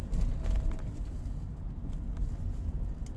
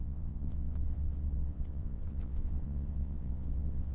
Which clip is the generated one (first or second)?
second